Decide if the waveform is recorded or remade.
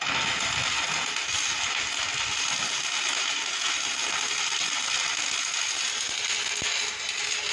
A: recorded